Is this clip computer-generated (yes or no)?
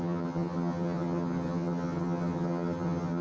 yes